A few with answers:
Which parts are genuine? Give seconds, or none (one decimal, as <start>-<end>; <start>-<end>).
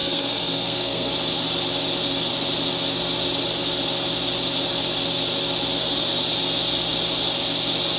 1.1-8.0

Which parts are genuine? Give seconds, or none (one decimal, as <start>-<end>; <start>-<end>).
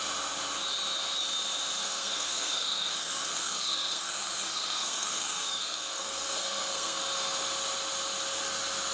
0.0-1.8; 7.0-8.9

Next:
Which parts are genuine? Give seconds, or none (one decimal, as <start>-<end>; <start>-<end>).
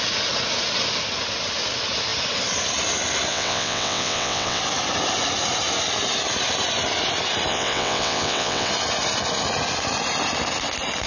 0.0-3.3; 4.6-7.5; 8.7-11.1